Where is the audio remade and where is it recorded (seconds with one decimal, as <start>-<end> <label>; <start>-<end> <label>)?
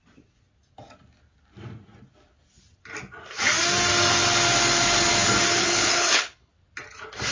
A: 0.0-5.6 recorded; 5.6-6.5 remade; 6.5-7.3 recorded